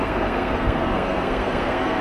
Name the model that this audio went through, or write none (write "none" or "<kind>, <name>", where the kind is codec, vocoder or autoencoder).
codec, SNAC